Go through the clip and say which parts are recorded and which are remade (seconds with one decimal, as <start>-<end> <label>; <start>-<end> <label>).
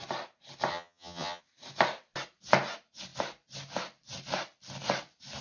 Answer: 0.0-0.7 recorded; 0.7-1.4 remade; 1.4-5.4 recorded